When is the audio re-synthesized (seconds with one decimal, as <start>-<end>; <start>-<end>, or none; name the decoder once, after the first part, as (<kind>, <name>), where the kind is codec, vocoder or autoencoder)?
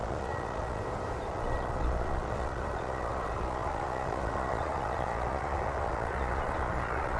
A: 0.0-0.8 (vocoder, Vocos); 1.3-7.2